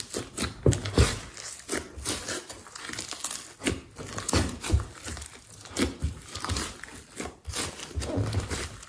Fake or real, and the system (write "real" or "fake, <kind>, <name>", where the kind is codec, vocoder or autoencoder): real